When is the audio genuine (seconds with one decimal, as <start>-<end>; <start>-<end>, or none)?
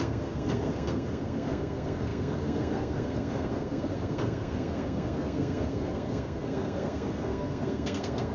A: none